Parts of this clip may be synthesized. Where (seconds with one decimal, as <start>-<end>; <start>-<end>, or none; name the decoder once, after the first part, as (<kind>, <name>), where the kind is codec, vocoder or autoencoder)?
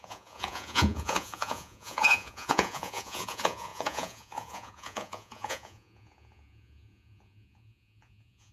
0.0-8.5 (vocoder, Vocos)